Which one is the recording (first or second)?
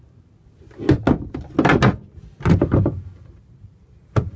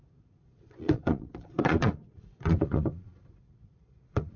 first